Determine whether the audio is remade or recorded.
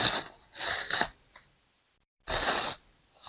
recorded